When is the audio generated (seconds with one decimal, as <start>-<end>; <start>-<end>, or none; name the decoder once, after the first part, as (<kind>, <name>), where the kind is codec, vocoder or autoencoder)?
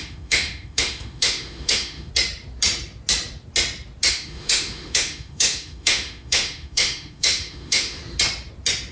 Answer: 0.0-2.1 (autoencoder, DAC-VAE); 4.1-8.0